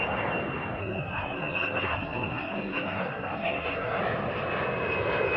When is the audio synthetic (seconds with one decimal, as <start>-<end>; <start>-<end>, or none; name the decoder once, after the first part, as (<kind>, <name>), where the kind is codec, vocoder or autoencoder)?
0.8-4.0 (codec, SNAC)